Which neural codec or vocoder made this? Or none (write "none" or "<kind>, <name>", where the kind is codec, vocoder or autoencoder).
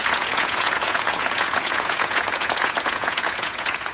vocoder, Vocos